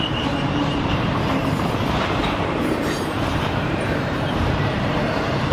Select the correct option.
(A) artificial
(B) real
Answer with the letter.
A